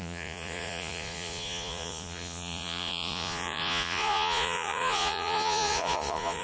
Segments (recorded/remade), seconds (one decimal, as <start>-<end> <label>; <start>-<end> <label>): 0.0-6.4 remade